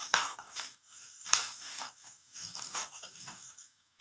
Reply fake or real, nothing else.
fake